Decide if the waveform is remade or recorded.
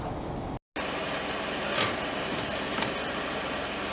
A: recorded